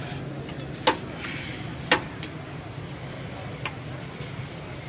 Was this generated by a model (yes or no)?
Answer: no